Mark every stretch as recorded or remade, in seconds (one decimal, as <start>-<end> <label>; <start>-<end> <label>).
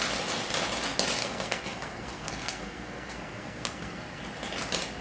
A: 0.0-1.2 recorded; 1.2-4.2 remade; 4.2-5.0 recorded